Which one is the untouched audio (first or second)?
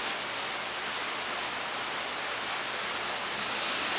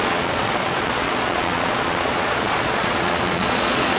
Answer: first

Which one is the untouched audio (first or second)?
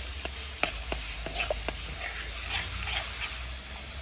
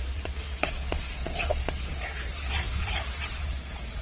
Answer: first